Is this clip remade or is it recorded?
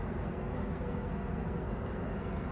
remade